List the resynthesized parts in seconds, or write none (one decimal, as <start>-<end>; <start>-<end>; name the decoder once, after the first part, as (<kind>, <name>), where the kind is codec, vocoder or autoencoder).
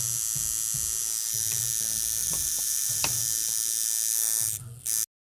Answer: 2.2-3.2 (vocoder, BigVGAN v2)